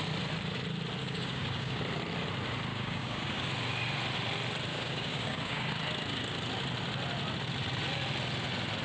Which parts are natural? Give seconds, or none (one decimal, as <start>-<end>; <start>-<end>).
0.0-1.0; 1.8-2.7; 3.5-4.7; 5.7-8.8